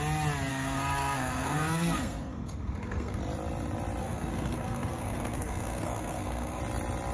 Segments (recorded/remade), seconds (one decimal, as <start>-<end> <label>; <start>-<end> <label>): 0.0-0.5 recorded; 0.5-3.2 remade; 3.2-4.0 recorded; 4.0-6.6 remade; 6.6-7.1 recorded

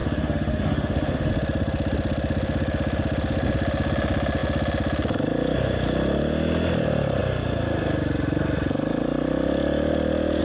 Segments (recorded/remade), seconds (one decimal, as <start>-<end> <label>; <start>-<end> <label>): 0.0-1.3 remade; 1.3-10.4 recorded

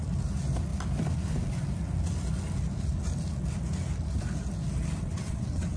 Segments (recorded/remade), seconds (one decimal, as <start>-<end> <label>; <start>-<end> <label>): 0.0-5.0 recorded; 5.0-5.8 remade

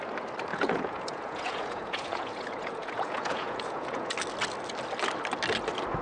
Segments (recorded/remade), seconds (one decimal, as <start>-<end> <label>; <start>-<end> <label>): 0.0-0.5 recorded; 0.5-4.1 remade; 4.1-6.0 recorded

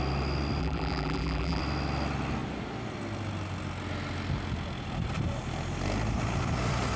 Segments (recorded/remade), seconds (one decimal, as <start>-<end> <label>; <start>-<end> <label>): 0.0-0.6 recorded; 0.6-1.6 remade; 1.6-7.0 recorded

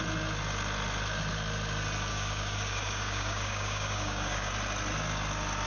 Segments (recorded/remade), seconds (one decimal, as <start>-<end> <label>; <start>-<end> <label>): 0.0-2.1 recorded; 2.1-4.5 remade; 4.5-5.7 recorded

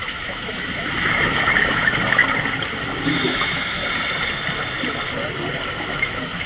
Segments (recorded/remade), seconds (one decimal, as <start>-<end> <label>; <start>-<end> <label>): 0.0-2.2 remade; 2.2-2.7 recorded; 2.7-3.8 remade; 3.8-5.7 recorded; 5.7-6.5 remade

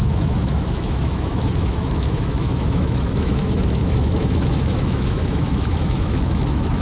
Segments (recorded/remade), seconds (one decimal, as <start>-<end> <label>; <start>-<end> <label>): 0.0-6.8 remade